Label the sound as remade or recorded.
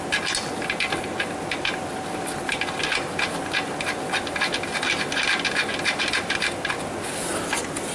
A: recorded